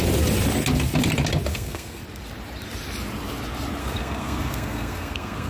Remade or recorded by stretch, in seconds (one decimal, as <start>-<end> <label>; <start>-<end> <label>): 0.0-1.5 recorded; 1.5-2.0 remade; 2.0-3.8 recorded; 3.8-5.5 remade